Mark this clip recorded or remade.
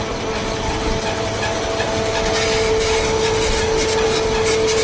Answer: recorded